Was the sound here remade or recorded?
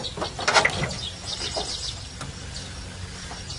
recorded